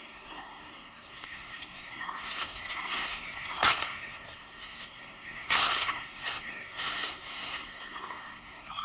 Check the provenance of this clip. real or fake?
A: fake